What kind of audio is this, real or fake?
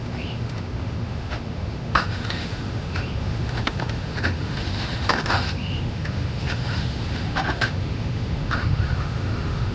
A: fake